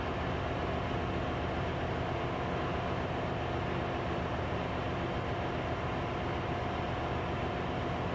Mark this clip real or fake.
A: real